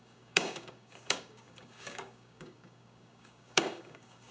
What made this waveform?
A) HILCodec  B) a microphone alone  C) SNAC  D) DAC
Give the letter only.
D